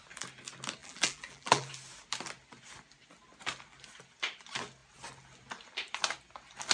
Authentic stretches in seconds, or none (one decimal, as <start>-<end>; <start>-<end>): 0.0-0.8; 1.7-6.7

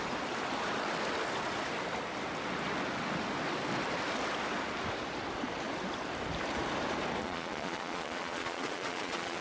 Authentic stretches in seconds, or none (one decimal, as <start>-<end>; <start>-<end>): 0.0-7.2